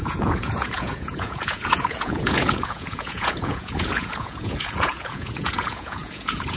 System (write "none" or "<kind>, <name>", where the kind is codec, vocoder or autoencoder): vocoder, Vocos